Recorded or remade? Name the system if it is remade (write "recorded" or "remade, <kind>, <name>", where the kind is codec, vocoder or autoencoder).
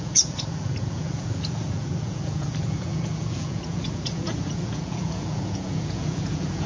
remade, vocoder, Vocos